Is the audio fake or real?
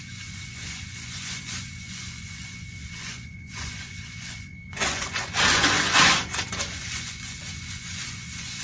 fake